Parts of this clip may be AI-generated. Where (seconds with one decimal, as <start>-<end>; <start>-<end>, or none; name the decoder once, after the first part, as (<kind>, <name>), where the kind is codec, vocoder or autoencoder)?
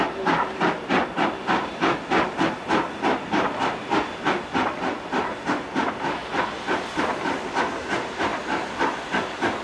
none